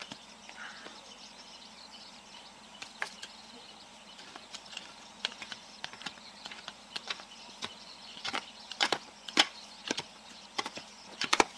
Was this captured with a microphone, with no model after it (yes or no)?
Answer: no